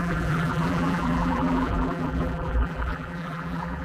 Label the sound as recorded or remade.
remade